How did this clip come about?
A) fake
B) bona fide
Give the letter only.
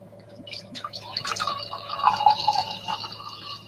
A